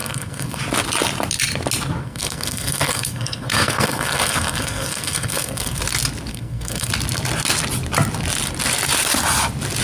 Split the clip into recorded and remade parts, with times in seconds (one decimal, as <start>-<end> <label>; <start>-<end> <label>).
0.0-0.6 remade; 0.6-2.0 recorded; 2.0-5.8 remade; 5.8-6.3 recorded; 6.3-6.9 remade; 6.9-9.8 recorded